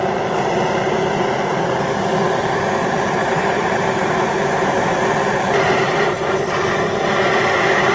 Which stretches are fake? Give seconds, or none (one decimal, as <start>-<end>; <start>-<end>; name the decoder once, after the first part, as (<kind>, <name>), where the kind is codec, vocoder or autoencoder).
3.2-6.9 (vocoder, BigVGAN v2)